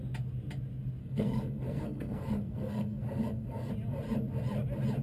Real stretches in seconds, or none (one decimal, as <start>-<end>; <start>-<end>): 0.0-1.0; 3.7-5.0